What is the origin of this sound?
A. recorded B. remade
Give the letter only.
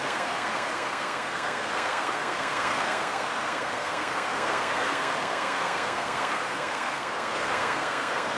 B